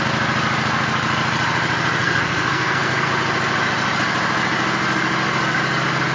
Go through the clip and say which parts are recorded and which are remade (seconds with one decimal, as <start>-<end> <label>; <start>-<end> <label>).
0.0-2.0 recorded; 2.0-3.1 remade; 3.1-6.1 recorded